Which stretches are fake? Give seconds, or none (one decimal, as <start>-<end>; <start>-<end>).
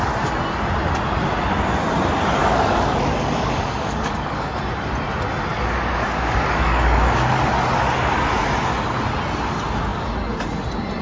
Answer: 2.4-4.6; 5.5-7.4